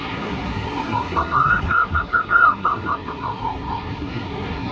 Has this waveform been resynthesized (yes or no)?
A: yes